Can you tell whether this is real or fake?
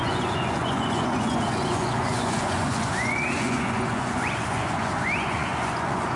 fake